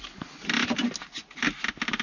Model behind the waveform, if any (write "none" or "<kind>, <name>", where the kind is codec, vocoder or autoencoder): none